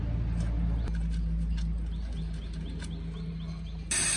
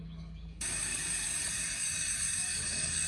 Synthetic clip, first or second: second